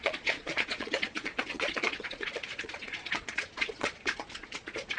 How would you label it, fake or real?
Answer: fake